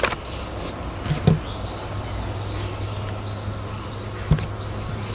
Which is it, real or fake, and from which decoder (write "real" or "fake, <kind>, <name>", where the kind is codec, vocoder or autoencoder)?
real